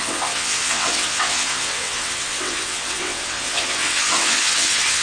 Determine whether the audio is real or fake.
fake